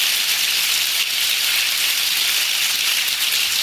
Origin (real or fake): real